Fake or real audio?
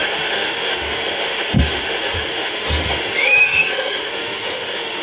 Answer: fake